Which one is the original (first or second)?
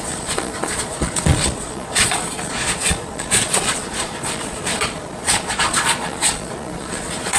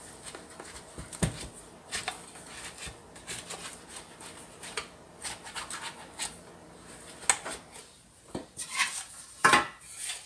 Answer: second